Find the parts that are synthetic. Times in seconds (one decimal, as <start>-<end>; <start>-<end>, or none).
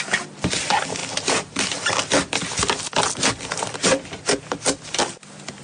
none